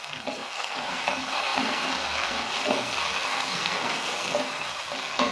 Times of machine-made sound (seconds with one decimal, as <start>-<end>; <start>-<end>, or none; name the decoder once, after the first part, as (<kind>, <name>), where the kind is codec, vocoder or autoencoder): 0.0-5.3 (codec, SNAC)